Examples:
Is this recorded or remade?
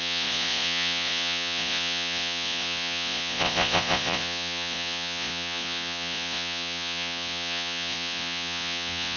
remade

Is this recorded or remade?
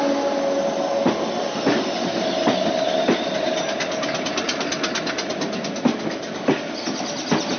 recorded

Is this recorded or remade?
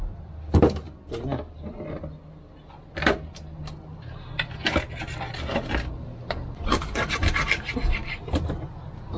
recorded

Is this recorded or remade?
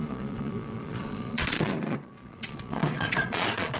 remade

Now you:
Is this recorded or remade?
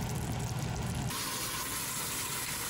recorded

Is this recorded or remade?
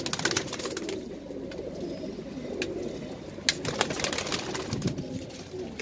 recorded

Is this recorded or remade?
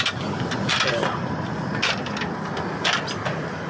recorded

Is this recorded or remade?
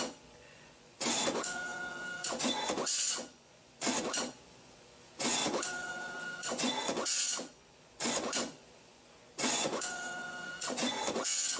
remade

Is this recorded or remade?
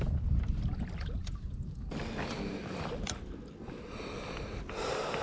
recorded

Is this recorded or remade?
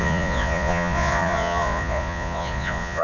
remade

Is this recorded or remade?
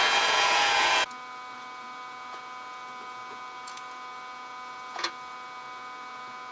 remade